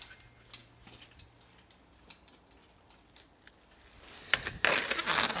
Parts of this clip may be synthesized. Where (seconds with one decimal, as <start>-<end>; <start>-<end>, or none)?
none